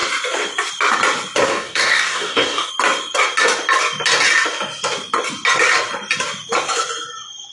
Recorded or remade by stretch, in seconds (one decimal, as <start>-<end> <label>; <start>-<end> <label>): 0.0-1.5 recorded; 1.5-2.7 remade; 2.7-7.5 recorded